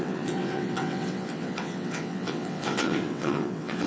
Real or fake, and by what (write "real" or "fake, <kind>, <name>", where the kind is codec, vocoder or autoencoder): fake, vocoder, WaveNeXt